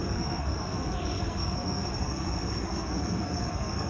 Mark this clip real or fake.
fake